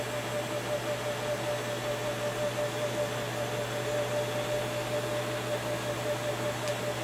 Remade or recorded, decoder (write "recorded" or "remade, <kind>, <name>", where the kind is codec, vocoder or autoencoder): recorded